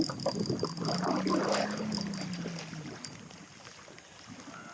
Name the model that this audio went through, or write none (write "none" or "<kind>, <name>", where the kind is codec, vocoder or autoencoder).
none